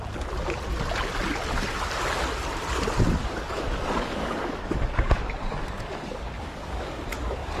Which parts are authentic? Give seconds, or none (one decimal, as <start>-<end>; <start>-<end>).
0.0-3.2